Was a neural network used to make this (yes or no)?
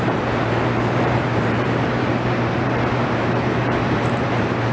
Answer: yes